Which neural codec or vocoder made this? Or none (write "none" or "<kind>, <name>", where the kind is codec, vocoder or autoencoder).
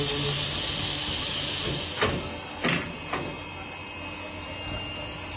none